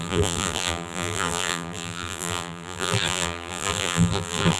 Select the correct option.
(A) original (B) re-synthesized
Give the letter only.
B